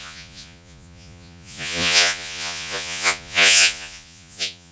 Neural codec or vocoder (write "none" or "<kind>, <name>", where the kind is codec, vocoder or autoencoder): vocoder, Vocos